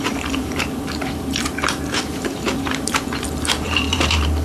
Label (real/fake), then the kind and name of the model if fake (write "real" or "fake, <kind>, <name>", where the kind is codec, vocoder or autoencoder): fake, vocoder, BigVGAN v2